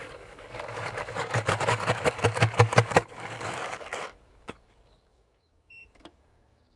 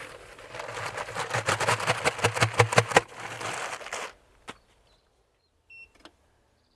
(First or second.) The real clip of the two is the second